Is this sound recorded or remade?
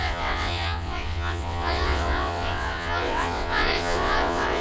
remade